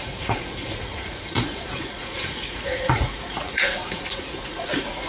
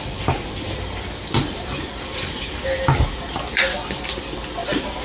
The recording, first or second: second